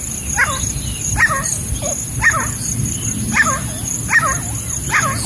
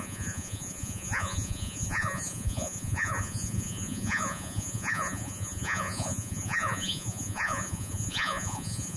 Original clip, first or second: first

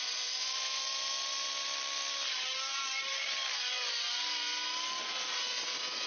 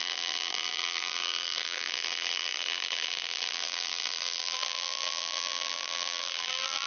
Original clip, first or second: first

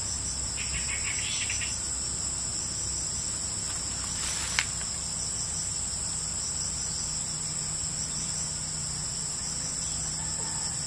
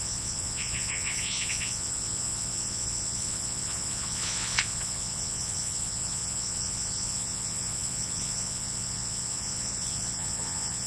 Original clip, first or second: first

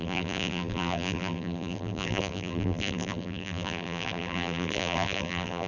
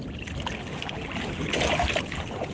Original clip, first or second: second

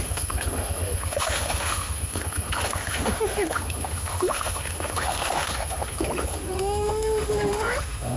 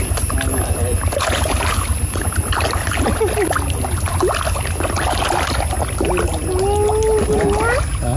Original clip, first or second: second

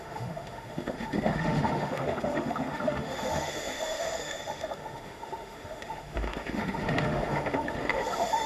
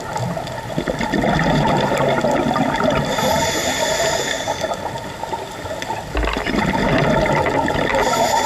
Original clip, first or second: second